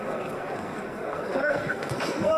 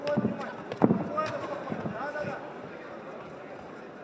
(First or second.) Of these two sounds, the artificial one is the first